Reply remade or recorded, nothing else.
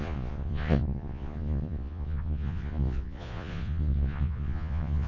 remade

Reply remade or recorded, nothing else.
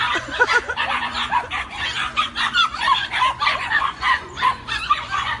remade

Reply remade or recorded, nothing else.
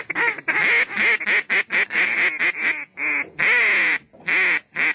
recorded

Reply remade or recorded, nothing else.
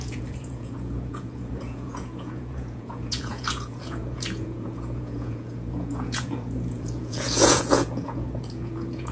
remade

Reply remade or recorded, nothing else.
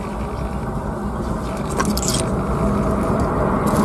recorded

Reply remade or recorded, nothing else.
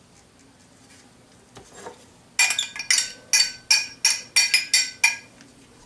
recorded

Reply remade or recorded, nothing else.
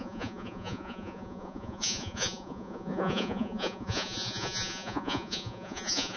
remade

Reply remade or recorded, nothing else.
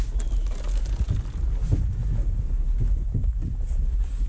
recorded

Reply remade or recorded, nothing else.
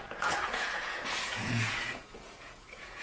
remade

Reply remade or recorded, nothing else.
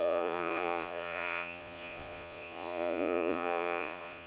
remade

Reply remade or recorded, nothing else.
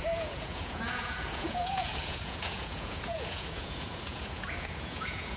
remade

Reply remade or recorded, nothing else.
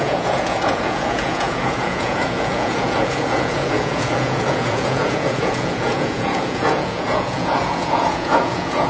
remade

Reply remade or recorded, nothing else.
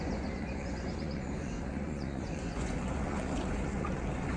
remade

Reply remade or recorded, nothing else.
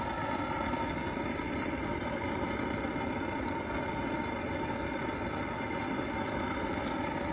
recorded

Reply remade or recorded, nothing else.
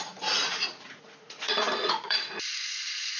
remade